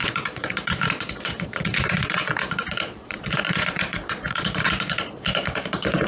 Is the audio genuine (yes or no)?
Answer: no